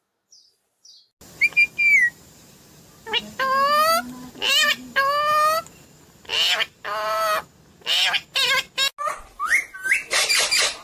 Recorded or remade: recorded